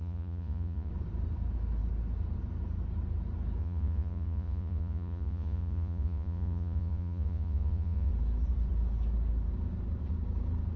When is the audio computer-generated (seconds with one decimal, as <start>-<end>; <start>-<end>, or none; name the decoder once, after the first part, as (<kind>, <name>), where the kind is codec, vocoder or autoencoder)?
0.0-0.9 (vocoder, Vocos); 3.6-8.1